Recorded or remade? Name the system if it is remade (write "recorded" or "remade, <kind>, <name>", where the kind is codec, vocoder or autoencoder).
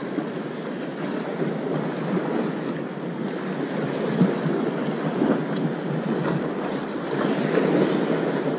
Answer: recorded